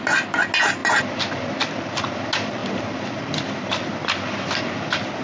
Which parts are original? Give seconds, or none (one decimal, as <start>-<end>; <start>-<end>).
0.0-2.6; 3.6-5.2